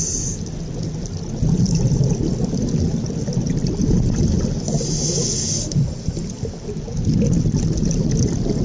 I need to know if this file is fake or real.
real